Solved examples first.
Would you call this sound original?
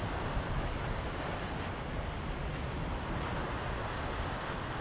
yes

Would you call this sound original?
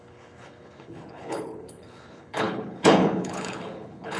no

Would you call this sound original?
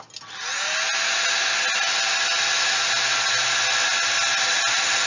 yes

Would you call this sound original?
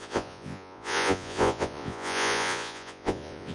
no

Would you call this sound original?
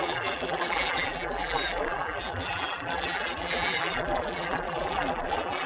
no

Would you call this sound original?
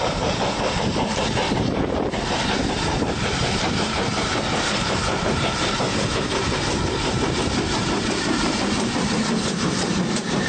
no